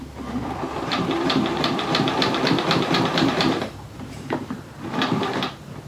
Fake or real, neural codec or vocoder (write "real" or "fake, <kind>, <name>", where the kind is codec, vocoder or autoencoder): fake, vocoder, BigVGAN v2